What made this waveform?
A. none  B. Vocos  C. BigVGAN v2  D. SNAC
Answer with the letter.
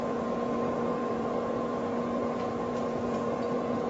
B